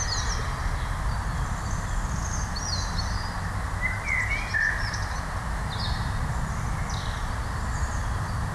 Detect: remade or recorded recorded